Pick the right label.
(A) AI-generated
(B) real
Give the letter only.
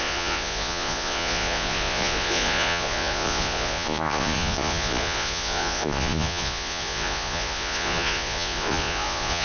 A